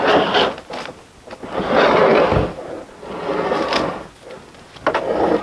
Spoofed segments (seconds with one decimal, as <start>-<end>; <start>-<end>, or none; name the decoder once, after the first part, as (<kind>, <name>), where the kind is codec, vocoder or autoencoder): none